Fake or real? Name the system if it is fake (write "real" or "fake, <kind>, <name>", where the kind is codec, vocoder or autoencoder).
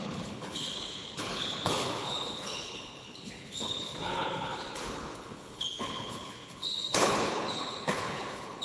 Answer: fake, codec, HILCodec